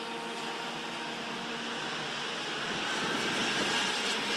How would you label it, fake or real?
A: real